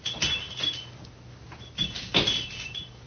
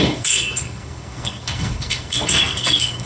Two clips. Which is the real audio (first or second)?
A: first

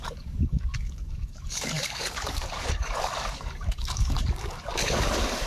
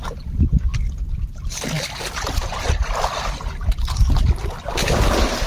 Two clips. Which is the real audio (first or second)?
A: second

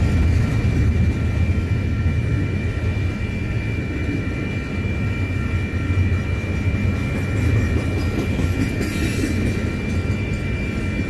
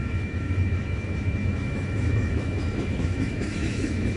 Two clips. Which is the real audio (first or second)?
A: first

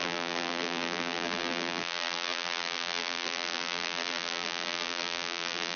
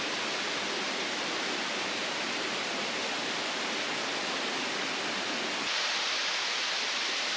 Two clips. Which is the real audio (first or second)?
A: second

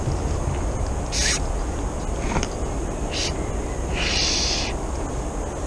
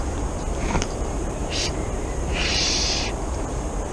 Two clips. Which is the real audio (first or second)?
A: first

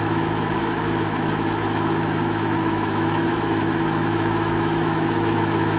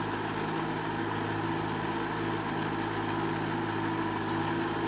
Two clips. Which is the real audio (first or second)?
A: second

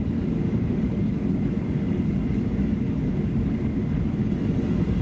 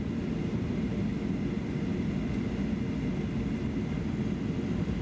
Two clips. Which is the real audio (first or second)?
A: second